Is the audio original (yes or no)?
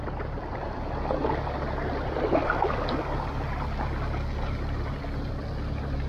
yes